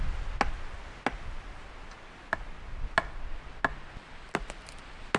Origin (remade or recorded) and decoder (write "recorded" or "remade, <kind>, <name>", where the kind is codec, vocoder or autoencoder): recorded